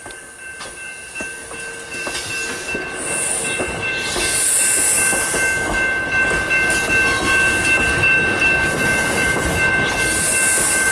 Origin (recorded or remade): recorded